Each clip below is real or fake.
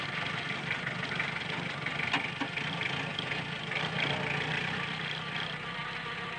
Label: real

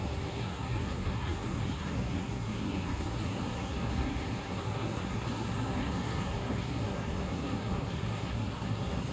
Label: fake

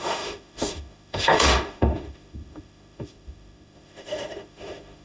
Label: fake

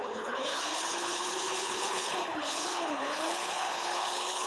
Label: fake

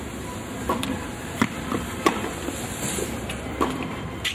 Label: fake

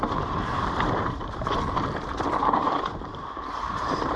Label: fake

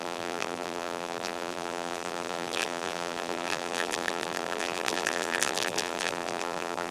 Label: fake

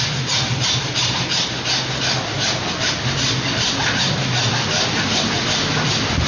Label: real